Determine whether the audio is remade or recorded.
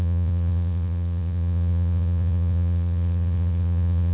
remade